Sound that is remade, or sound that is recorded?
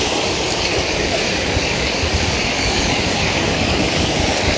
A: remade